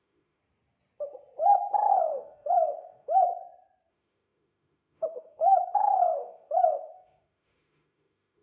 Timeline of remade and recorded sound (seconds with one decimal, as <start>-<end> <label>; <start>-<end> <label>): 0.0-0.4 remade; 0.4-2.0 recorded; 2.0-3.3 remade; 3.3-3.9 recorded; 3.9-8.4 remade